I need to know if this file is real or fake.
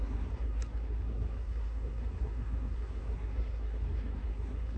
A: fake